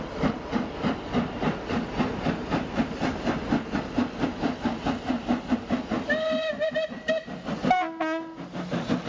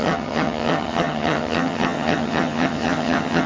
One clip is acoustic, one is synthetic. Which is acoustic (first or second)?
first